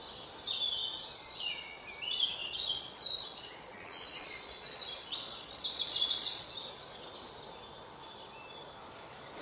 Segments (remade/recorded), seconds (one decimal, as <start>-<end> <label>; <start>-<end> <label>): 0.0-0.8 recorded; 0.8-1.8 remade; 1.8-2.4 recorded; 2.4-6.5 remade; 6.5-9.4 recorded